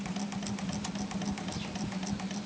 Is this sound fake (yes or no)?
no